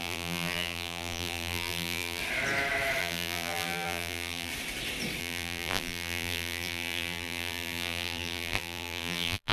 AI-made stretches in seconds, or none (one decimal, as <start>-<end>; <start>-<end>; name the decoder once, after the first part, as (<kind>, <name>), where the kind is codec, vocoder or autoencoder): 0.0-2.2 (vocoder, BigVGAN v2); 3.0-4.5; 5.2-9.5